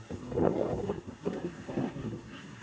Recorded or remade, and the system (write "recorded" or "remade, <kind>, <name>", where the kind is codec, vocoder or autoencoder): remade, codec, SNAC